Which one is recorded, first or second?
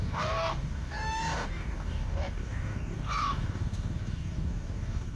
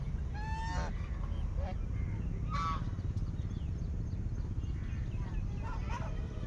second